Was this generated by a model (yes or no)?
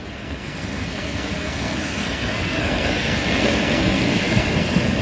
yes